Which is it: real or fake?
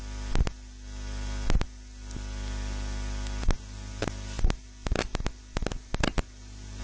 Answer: real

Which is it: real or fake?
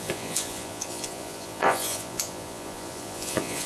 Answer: fake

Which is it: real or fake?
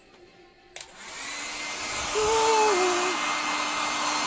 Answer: real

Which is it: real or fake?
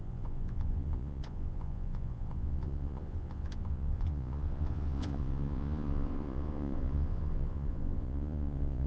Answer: fake